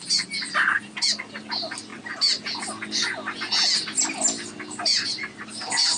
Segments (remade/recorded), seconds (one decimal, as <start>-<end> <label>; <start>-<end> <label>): 0.0-6.0 recorded